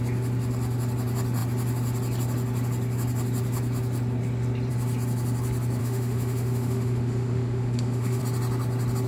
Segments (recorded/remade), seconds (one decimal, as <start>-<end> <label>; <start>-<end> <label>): 0.0-5.8 recorded; 5.8-8.2 remade; 8.2-9.1 recorded